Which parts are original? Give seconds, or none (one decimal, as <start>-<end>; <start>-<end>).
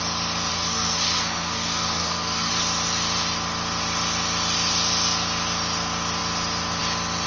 0.0-0.5; 2.5-7.3